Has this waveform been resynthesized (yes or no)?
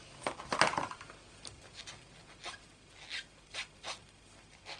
no